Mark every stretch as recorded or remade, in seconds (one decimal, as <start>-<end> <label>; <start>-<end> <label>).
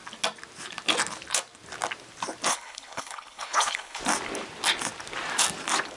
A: 0.0-2.5 recorded; 2.5-4.0 remade; 4.0-6.0 recorded